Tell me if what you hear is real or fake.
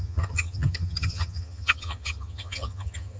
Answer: fake